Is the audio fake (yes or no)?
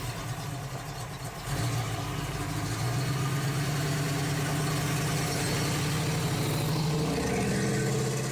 no